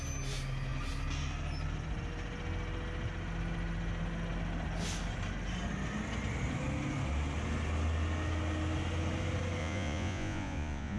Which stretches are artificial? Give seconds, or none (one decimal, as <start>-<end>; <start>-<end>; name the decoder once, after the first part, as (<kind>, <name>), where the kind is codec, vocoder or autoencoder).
9.6-11.0 (vocoder, Vocos)